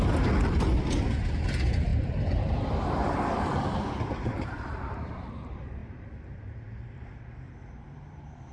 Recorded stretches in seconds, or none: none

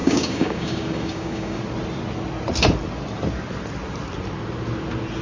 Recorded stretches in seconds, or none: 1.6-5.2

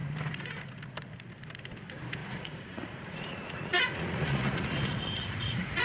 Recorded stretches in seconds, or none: 0.0-2.2

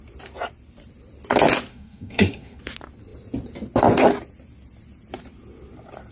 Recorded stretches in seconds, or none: 0.0-1.7; 2.6-6.1